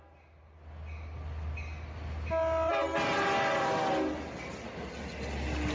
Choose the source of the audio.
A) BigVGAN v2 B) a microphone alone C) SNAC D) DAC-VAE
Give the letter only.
B